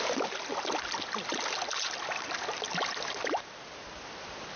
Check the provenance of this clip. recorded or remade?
recorded